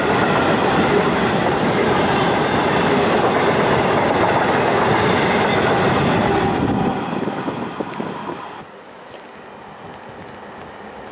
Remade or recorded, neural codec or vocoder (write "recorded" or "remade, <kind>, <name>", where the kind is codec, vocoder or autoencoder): recorded